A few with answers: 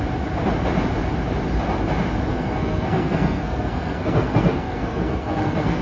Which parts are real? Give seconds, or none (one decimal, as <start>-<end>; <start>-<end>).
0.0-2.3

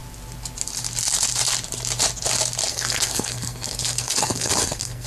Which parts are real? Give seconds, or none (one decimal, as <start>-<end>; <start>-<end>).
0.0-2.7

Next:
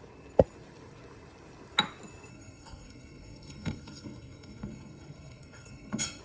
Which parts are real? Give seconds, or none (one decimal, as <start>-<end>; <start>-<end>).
0.0-2.3

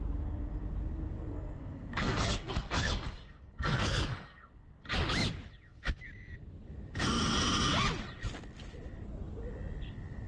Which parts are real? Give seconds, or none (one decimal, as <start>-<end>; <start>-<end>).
0.0-1.3; 4.5-10.3